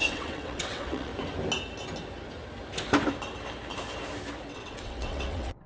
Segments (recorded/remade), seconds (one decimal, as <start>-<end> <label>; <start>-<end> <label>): 0.0-1.1 remade; 1.1-4.5 recorded; 4.5-5.7 remade